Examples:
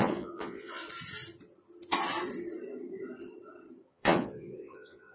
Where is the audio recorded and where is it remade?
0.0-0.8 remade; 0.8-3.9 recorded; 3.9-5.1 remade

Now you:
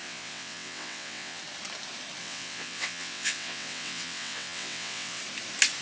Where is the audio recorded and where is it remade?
0.0-1.4 remade; 1.4-2.2 recorded; 2.2-5.2 remade; 5.2-5.8 recorded